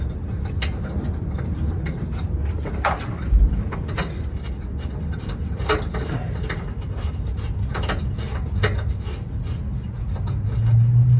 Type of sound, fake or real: real